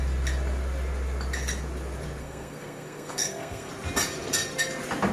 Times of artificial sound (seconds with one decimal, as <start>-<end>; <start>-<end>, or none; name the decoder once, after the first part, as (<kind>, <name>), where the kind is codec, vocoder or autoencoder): 2.2-3.7 (codec, SNAC)